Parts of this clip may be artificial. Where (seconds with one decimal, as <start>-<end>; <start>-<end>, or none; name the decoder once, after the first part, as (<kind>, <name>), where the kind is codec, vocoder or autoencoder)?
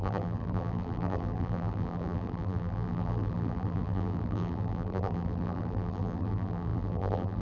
0.0-7.4 (vocoder, BigVGAN v2)